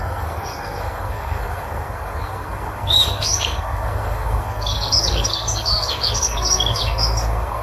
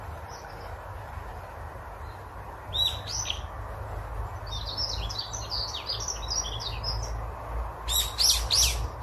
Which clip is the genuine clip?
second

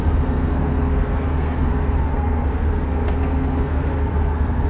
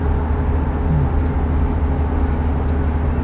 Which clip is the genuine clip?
second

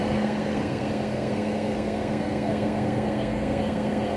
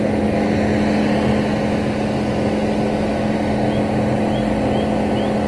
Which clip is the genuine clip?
second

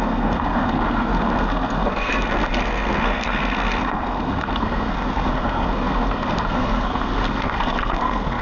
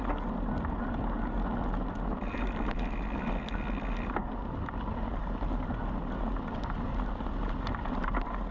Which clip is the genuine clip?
second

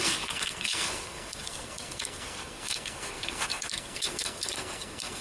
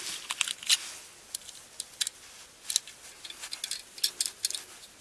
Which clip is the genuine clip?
second